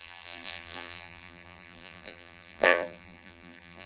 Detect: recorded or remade remade